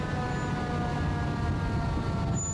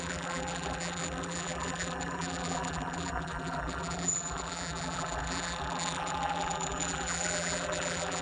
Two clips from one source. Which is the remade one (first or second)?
second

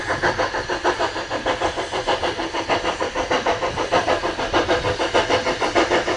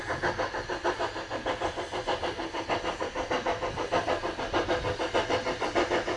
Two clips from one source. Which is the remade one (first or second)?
first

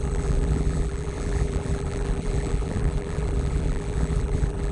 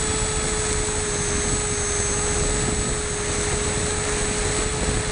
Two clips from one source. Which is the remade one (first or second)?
first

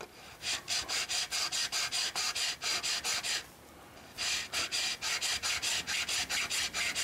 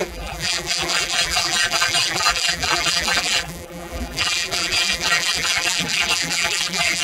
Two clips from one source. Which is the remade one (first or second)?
second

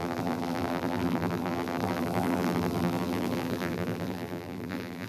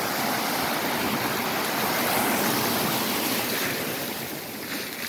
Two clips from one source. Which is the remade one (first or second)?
first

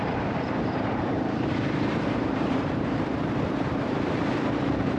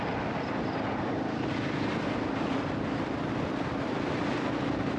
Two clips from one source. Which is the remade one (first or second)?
first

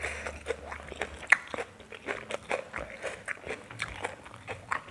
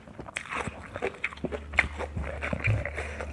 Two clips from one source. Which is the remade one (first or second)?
second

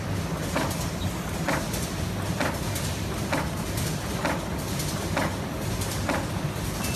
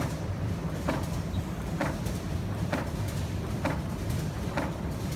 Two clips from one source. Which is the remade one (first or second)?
second